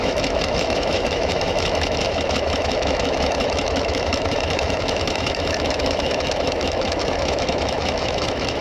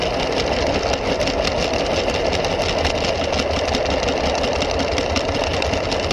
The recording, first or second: second